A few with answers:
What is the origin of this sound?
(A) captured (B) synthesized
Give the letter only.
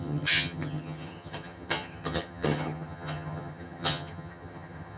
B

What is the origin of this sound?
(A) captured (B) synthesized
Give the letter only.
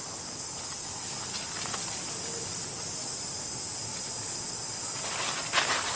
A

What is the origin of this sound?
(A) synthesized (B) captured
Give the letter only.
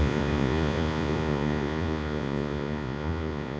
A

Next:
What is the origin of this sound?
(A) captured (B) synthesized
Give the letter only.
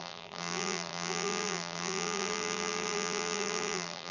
B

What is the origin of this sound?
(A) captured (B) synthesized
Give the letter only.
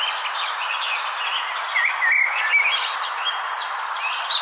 A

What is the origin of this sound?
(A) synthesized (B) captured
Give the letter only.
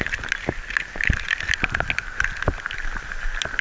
B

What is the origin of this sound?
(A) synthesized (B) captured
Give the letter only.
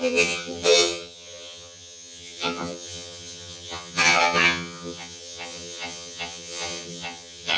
A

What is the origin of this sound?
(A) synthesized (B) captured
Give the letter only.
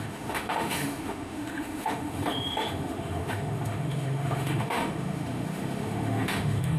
A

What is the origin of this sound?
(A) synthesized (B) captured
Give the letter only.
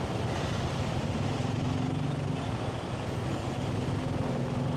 B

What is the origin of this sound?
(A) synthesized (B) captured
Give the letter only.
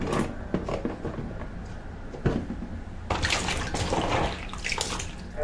B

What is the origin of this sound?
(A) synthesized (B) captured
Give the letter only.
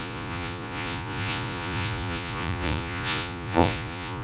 A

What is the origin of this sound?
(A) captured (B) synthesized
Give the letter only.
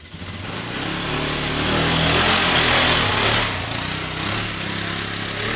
A